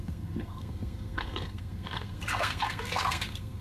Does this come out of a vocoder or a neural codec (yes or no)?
yes